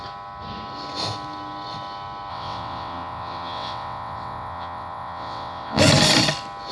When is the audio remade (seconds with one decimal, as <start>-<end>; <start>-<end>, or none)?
2.3-5.8

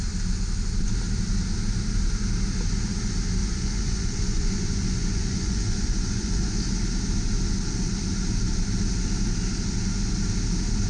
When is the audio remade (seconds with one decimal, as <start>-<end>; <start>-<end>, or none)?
3.4-6.7

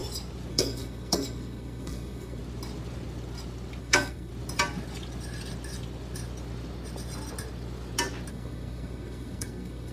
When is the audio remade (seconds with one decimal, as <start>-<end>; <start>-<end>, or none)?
0.5-2.4; 3.8-4.3; 8.3-9.9

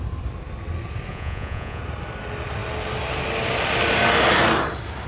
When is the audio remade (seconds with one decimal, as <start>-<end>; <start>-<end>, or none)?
1.1-1.8

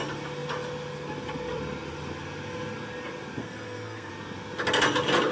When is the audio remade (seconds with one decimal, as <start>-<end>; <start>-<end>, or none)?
3.4-4.1

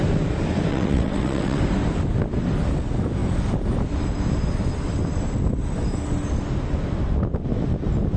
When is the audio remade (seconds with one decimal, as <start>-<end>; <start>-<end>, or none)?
0.7-1.6